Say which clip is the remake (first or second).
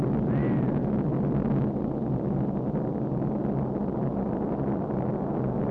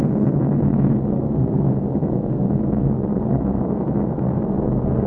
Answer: second